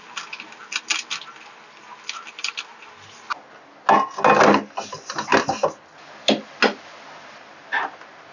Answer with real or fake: real